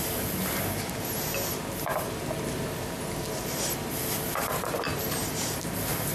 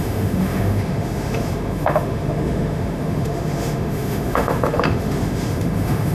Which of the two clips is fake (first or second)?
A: second